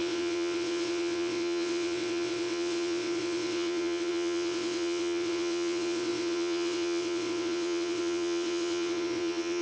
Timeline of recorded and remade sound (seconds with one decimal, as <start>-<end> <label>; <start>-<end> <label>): 0.0-9.6 remade